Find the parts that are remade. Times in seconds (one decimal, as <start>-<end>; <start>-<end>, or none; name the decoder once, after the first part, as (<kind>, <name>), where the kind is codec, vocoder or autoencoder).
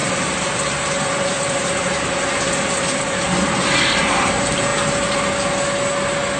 none